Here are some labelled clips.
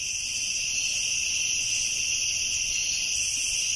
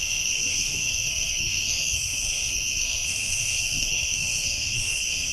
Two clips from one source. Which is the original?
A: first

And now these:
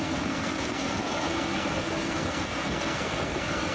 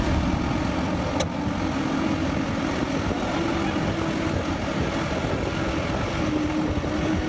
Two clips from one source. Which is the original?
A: second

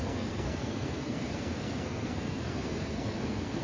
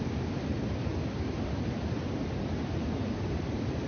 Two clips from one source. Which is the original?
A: second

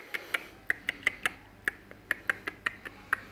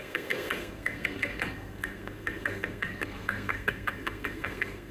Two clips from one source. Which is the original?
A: first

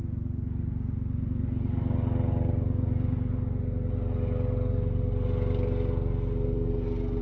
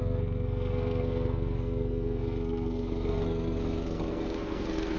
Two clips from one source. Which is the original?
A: first